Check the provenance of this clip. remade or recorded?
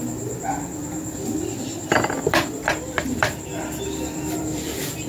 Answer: remade